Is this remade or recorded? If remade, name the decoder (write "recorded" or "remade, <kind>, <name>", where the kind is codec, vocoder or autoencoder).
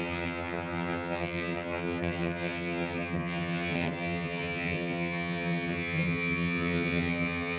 remade, vocoder, HiFi-GAN